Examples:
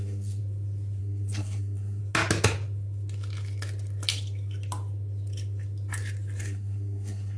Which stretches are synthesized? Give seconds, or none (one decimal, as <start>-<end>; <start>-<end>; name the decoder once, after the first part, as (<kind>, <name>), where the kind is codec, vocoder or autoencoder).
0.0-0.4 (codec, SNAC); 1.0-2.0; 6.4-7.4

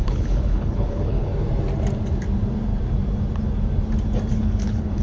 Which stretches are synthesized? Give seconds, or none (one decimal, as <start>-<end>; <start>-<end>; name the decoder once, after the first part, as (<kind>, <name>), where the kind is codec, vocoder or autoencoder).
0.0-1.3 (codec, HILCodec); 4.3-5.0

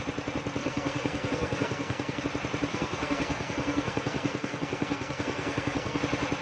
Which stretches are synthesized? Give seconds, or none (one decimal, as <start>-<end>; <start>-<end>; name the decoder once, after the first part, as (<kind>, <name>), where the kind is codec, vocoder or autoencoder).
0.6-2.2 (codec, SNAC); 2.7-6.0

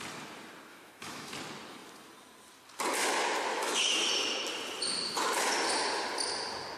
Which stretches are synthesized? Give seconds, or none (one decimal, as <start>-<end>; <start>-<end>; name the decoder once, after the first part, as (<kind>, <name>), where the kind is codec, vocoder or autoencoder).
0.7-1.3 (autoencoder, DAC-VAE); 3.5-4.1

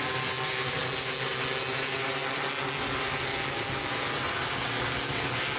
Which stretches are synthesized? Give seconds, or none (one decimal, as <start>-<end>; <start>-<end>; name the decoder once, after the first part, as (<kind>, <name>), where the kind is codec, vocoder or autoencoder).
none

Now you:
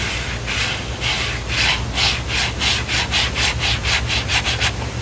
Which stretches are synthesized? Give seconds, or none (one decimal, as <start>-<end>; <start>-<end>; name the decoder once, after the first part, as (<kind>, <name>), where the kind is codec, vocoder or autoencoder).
none

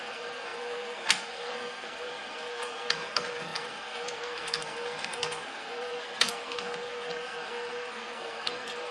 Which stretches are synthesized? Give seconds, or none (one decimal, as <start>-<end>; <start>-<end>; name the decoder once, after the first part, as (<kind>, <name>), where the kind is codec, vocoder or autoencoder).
0.0-8.9 (codec, SNAC)

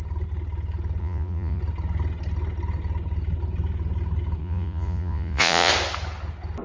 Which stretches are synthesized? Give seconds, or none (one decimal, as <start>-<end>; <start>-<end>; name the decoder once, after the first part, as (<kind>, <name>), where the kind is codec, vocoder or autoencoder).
1.0-1.6 (vocoder, Vocos); 4.4-5.7